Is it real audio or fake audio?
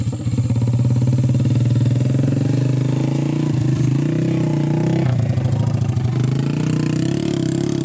real